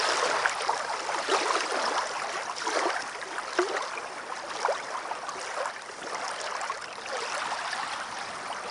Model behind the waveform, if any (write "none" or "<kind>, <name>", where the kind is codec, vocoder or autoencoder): none